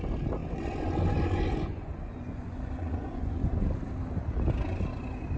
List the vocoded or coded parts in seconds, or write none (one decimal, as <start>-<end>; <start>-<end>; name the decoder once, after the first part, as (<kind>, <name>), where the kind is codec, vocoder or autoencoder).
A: 0.4-3.6 (vocoder, Vocos)